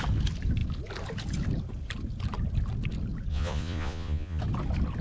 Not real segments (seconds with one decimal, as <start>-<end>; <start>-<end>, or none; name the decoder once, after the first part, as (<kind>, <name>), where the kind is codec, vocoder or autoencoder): 3.3-4.4 (vocoder, Vocos)